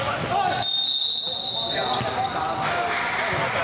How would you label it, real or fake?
real